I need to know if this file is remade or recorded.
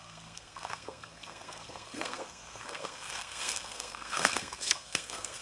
remade